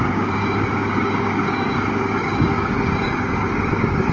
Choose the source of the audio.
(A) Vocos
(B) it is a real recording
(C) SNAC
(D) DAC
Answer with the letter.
D